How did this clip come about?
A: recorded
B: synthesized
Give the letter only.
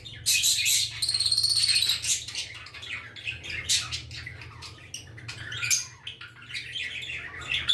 A